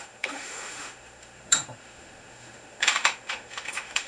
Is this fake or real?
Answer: fake